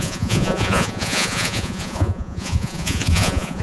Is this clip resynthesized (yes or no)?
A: yes